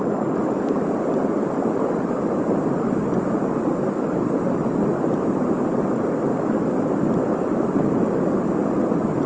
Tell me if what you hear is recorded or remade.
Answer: recorded